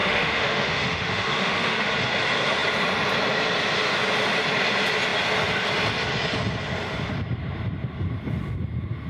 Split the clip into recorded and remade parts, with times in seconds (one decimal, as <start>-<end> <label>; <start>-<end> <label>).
0.0-1.9 remade; 1.9-9.1 recorded